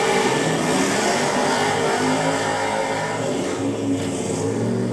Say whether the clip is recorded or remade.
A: recorded